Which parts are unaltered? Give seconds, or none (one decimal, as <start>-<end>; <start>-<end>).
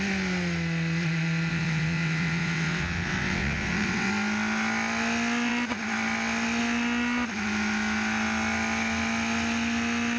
0.0-1.5; 4.1-10.2